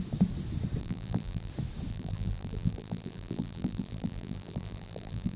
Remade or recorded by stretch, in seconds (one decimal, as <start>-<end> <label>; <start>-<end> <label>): 0.0-0.8 recorded; 0.8-1.5 remade; 1.5-1.9 recorded; 1.9-5.4 remade